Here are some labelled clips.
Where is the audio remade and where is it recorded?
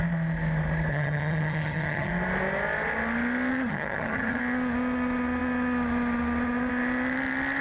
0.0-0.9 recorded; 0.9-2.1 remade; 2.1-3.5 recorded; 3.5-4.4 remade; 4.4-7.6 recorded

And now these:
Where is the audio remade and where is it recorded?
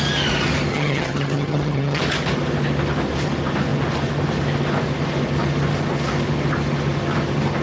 0.0-0.7 recorded; 0.7-2.0 remade; 2.0-7.6 recorded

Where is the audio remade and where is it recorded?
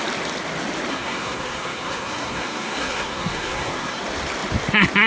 0.0-0.9 recorded; 0.9-4.0 remade; 4.0-5.1 recorded